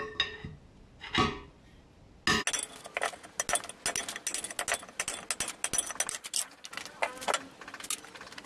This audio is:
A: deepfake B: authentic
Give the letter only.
B